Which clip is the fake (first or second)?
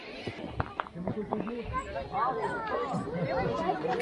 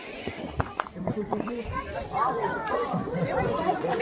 second